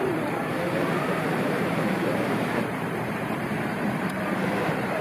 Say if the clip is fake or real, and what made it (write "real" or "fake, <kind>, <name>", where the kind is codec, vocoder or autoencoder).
fake, vocoder, BigVGAN v2